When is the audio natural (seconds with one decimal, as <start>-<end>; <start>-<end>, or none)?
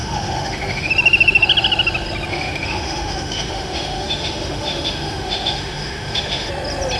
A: 0.9-2.3; 6.5-7.0